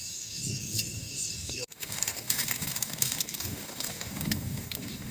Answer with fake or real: fake